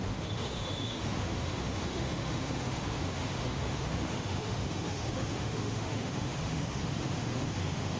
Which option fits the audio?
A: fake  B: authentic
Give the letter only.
A